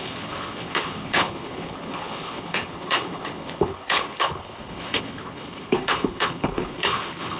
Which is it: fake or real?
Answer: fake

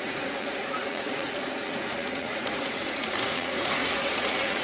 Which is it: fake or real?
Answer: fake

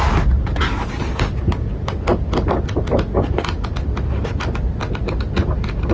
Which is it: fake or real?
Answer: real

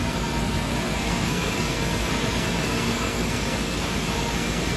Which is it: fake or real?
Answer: fake